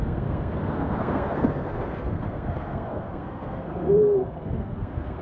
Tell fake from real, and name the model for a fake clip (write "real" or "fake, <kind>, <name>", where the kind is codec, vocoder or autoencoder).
fake, codec, SNAC